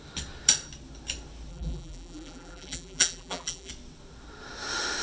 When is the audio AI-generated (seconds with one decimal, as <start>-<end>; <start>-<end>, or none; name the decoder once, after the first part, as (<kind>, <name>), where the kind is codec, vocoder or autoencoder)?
1.5-3.7 (vocoder, BigVGAN v2)